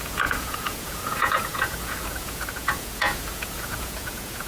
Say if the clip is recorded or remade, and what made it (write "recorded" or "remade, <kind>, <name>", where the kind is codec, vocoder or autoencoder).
remade, vocoder, Vocos